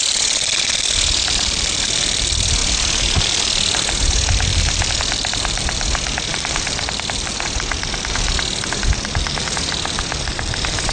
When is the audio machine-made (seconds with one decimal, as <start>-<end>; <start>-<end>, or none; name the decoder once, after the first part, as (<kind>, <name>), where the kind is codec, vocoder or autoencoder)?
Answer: none